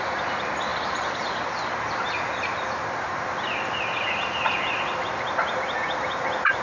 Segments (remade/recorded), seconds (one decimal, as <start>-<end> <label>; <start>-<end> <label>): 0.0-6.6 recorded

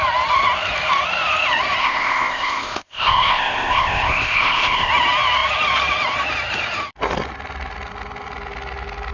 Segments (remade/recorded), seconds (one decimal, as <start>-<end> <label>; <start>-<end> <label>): 0.0-1.8 recorded; 1.8-4.9 remade; 4.9-9.1 recorded

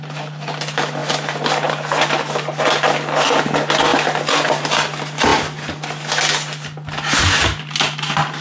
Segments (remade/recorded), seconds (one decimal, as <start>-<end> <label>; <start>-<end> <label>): 0.0-8.4 recorded

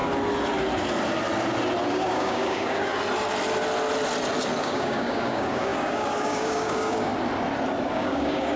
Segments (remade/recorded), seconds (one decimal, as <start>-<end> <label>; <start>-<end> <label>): 0.0-1.9 recorded; 1.9-2.9 remade; 2.9-4.6 recorded; 4.6-7.1 remade; 7.1-7.9 recorded; 7.9-8.6 remade

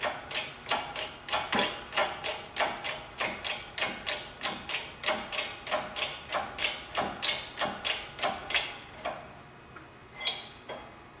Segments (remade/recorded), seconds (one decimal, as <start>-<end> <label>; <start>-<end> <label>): 0.0-5.0 recorded; 5.0-6.3 remade; 6.3-8.4 recorded; 8.4-9.0 remade; 9.0-11.2 recorded

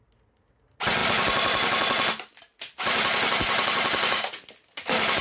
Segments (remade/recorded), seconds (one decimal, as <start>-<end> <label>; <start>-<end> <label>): 0.0-5.2 recorded